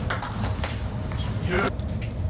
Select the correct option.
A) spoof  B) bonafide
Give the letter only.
B